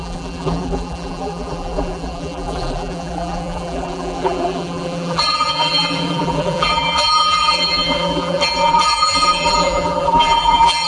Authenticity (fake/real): fake